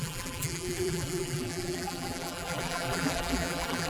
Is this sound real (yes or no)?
no